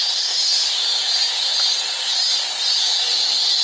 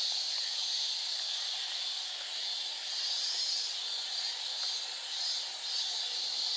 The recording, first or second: first